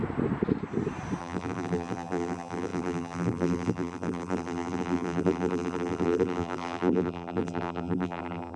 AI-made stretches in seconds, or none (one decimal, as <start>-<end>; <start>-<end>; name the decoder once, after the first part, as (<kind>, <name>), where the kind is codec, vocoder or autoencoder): 1.2-8.6 (vocoder, BigVGAN v2)